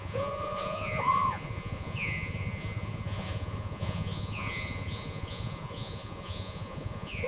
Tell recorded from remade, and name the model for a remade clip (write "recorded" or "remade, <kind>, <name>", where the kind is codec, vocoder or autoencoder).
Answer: remade, vocoder, Vocos